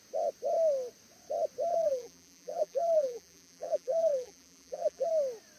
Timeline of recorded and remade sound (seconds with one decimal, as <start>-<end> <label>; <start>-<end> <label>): 0.0-1.7 recorded; 1.7-5.1 remade; 5.1-5.6 recorded